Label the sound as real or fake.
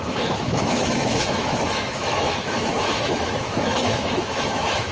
fake